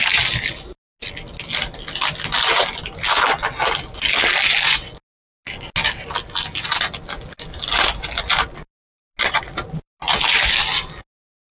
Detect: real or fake real